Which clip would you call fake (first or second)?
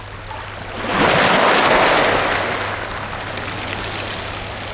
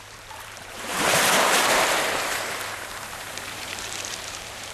second